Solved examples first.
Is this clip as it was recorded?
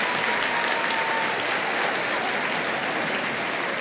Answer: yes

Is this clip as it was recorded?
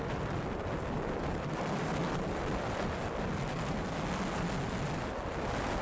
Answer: yes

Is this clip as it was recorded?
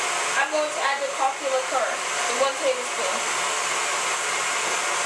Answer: yes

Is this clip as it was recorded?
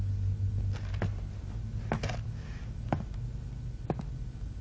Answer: yes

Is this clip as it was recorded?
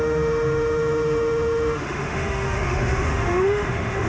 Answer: no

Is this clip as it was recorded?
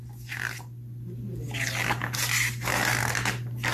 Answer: yes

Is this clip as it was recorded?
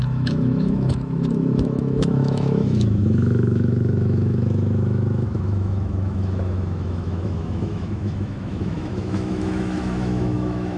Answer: no